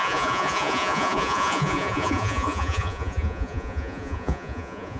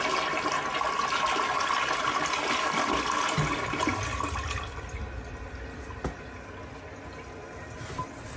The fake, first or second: first